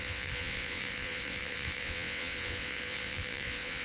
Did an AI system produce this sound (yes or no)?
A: yes